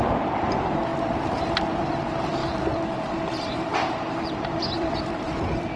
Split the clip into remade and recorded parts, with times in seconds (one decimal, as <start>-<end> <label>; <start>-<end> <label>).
0.0-0.9 remade; 0.9-1.4 recorded; 1.4-2.4 remade; 2.4-3.0 recorded; 3.0-5.8 remade